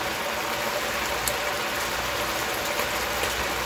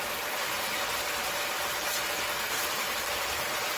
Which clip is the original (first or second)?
first